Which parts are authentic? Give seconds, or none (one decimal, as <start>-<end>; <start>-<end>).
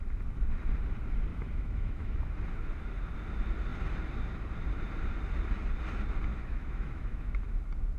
0.0-1.3; 2.3-6.3; 7.5-8.0